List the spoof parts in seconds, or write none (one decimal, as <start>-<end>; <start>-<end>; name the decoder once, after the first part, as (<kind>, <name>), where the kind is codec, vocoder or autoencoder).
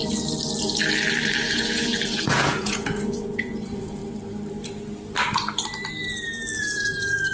1.4-4.0 (vocoder, Vocos); 6.6-7.3